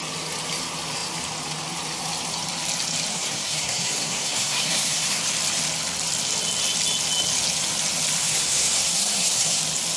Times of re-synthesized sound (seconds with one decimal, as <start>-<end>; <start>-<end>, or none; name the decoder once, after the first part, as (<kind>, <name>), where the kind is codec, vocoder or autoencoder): 3.1-5.2 (codec, SNAC); 8.2-9.6